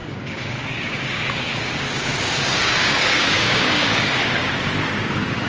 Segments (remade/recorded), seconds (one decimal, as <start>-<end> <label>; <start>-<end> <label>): 0.0-5.5 remade